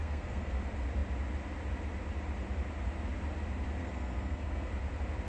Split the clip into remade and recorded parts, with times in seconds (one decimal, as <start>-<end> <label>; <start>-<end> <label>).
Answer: 0.0-0.6 remade; 0.6-3.8 recorded; 3.8-4.7 remade; 4.7-5.3 recorded

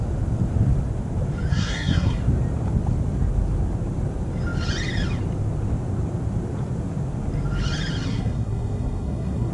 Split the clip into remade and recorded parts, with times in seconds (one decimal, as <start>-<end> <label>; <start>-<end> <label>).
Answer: 0.0-1.5 recorded; 1.5-2.2 remade; 2.2-8.1 recorded; 8.1-9.5 remade

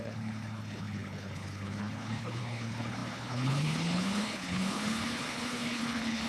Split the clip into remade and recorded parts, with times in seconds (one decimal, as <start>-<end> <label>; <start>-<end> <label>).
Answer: 0.0-6.3 remade

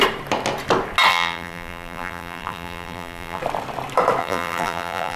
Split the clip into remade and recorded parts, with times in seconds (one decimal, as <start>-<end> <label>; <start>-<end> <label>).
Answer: 0.0-1.1 recorded; 1.1-3.4 remade; 3.4-4.2 recorded; 4.2-5.2 remade

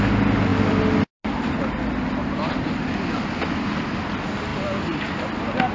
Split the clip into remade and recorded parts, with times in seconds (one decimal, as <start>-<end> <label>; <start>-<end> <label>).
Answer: 0.0-5.7 recorded

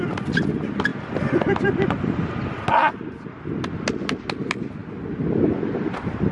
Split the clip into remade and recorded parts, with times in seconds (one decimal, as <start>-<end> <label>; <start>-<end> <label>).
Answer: 0.0-6.3 recorded

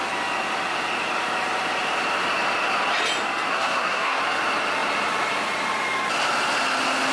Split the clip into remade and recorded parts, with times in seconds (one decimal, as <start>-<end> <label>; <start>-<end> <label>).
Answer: 0.0-3.5 recorded; 3.5-4.2 remade; 4.2-7.1 recorded